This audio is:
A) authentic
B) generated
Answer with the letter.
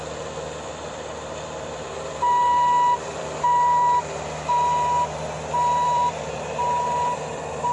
B